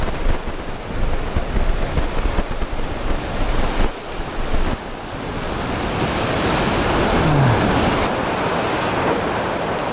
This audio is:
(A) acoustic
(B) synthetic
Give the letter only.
A